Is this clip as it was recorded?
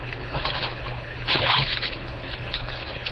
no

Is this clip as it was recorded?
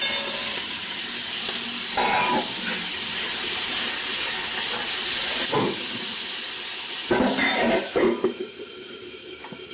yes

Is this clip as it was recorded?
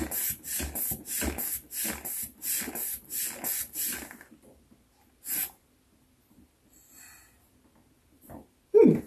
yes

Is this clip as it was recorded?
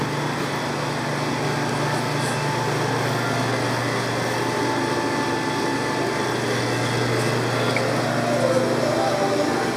yes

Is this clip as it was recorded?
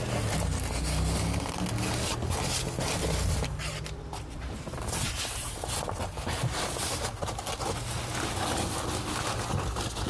yes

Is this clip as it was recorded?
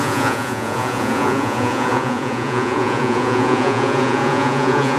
no